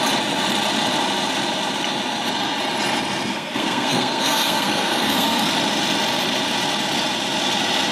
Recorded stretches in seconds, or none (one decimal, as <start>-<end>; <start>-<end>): 0.0-3.3; 5.5-7.9

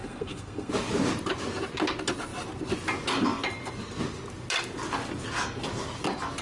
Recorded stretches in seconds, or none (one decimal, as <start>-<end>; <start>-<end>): 0.7-6.4

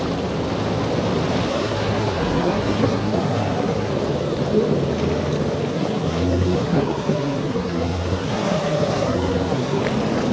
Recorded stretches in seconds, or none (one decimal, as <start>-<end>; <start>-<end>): 0.0-1.5; 3.9-5.7; 9.8-10.3

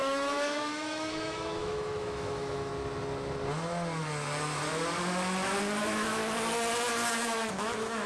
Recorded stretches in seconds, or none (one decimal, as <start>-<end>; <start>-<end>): 2.7-5.8; 6.2-7.1